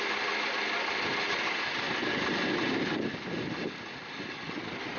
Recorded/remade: recorded